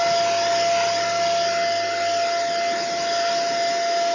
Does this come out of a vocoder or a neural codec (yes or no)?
no